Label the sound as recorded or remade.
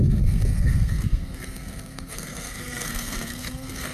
remade